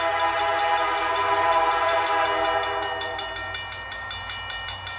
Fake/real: real